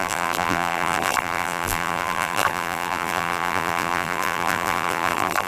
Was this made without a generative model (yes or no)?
no